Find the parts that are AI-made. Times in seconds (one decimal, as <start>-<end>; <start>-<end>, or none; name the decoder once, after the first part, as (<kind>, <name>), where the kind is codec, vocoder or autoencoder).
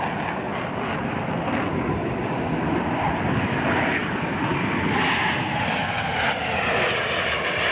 none